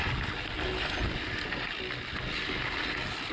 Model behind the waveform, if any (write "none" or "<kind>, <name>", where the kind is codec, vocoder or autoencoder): none